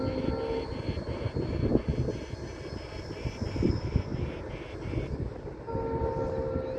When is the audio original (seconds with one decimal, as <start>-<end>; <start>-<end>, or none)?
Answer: 0.0-6.8